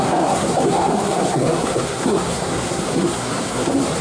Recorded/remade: remade